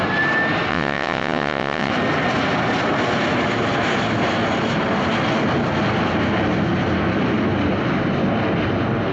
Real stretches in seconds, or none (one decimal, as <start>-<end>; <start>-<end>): 0.0-0.7; 1.9-9.1